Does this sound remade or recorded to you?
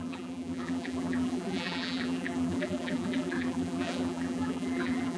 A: remade